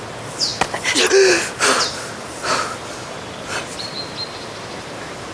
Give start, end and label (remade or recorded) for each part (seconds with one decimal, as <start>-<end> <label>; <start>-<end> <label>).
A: 0.0-5.3 recorded